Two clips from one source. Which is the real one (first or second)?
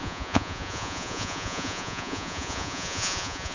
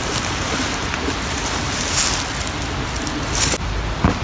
second